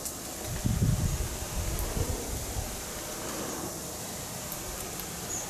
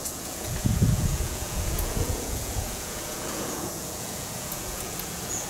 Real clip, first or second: first